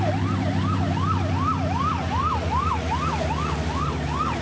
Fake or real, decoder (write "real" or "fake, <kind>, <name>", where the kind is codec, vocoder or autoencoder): real